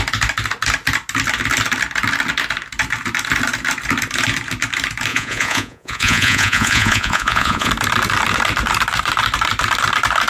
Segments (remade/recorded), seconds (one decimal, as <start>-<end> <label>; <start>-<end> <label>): 0.0-5.1 recorded; 5.1-7.7 remade; 7.7-10.3 recorded